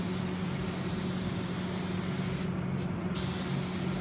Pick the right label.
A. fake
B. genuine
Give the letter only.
B